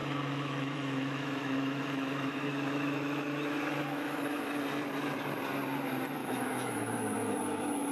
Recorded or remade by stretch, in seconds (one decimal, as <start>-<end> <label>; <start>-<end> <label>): 0.0-4.6 remade; 4.6-6.2 recorded; 6.2-6.9 remade; 6.9-7.9 recorded